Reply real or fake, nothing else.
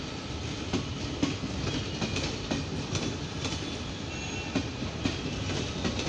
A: real